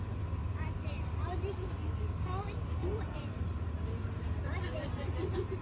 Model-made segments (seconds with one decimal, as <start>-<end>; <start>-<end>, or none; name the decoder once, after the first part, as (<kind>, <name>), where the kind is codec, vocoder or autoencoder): 0.4-1.7 (vocoder, BigVGAN v2); 2.8-3.7